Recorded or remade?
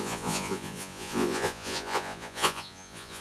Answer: remade